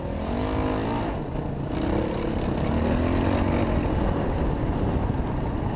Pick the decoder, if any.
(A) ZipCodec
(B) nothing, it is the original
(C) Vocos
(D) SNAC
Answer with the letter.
B